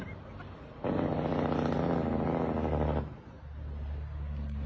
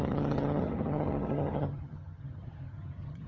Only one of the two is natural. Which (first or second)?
first